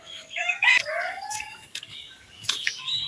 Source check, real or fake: fake